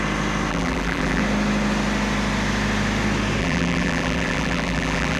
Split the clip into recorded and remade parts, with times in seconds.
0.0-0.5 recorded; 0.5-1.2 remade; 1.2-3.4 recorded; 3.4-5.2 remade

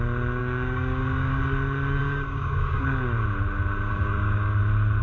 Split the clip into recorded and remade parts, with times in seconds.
0.0-0.4 recorded; 0.4-1.4 remade; 1.4-2.0 recorded; 2.0-2.8 remade; 2.8-3.9 recorded; 3.9-4.6 remade; 4.6-5.0 recorded

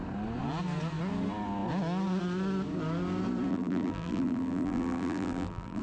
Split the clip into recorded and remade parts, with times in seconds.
0.0-3.5 recorded; 3.5-5.8 remade

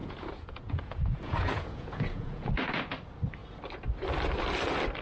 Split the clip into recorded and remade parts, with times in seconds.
0.0-2.5 remade; 2.5-5.0 recorded

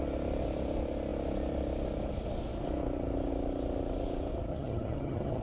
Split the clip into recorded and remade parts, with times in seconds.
0.0-4.5 recorded; 4.5-5.4 remade